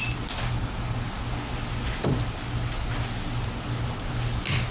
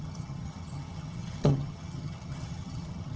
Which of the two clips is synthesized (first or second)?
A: second